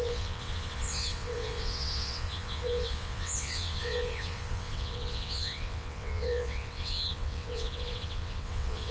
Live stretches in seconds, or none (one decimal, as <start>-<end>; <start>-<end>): none